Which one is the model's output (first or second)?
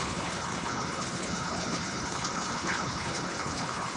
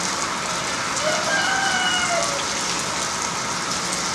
first